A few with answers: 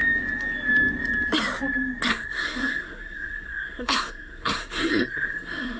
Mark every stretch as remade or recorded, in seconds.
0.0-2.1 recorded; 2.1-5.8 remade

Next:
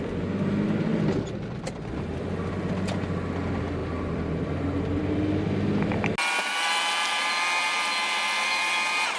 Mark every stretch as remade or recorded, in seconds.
0.0-9.2 recorded

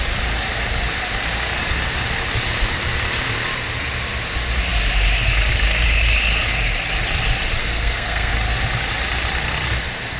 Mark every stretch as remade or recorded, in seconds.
0.0-7.6 recorded; 7.6-8.3 remade; 8.3-10.2 recorded